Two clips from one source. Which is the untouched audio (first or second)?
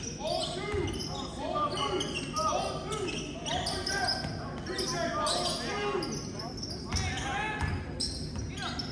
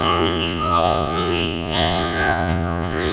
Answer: first